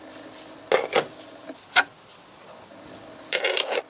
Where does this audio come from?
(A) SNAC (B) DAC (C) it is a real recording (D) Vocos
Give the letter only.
C